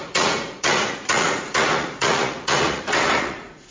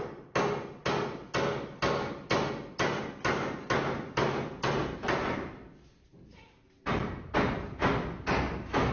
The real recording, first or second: second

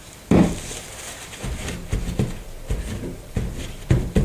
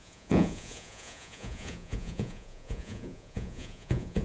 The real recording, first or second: first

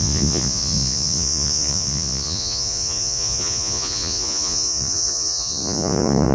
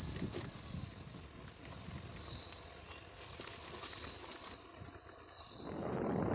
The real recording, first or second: second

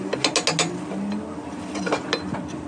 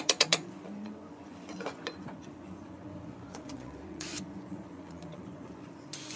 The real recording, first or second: first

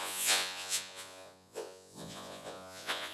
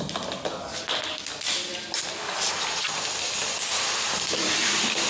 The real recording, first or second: second